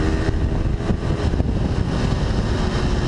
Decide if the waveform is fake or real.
real